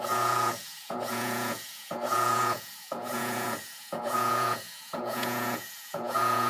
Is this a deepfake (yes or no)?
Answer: yes